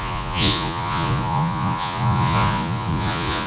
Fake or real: fake